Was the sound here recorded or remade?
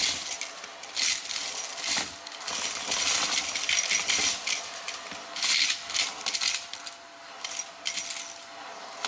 recorded